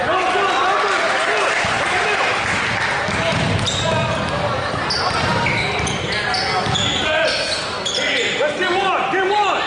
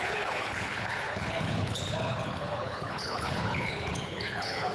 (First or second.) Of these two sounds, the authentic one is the first